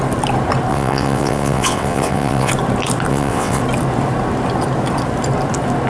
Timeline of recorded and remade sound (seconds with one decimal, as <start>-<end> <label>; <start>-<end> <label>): 0.0-0.7 recorded; 0.7-2.5 remade; 2.5-3.1 recorded; 3.1-3.6 remade; 3.6-5.9 recorded